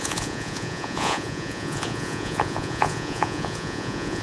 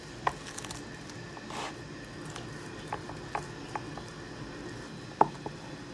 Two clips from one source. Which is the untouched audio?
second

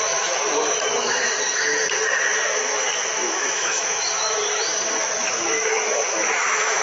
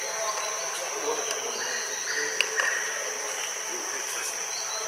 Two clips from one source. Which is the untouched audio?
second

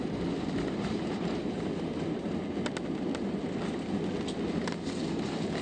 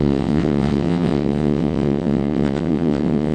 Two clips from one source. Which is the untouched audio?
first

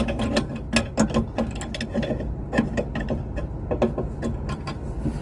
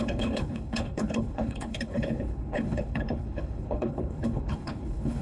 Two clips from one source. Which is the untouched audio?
first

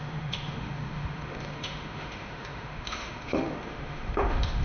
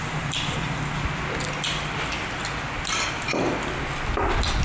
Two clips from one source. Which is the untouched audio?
second